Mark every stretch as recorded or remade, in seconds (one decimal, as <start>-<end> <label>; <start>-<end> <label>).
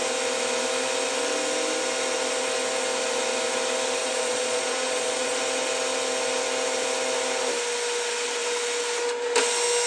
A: 0.0-4.0 recorded; 4.0-5.4 remade; 5.4-9.9 recorded